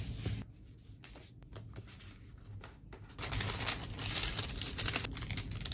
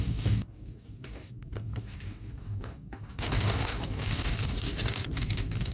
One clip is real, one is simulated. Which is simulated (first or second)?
second